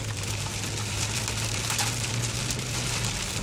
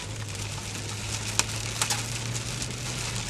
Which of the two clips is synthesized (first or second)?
first